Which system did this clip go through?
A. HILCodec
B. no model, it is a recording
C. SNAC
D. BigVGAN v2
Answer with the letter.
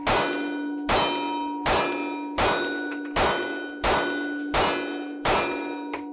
B